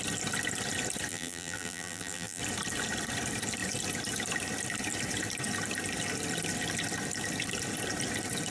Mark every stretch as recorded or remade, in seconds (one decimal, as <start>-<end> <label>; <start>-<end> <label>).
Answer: 0.0-1.1 recorded; 1.1-2.4 remade; 2.4-8.5 recorded